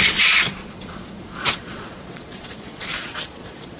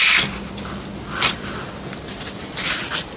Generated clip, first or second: first